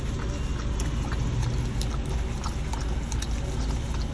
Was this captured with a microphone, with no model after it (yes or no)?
yes